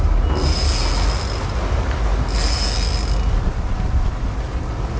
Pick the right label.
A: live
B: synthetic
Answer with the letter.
A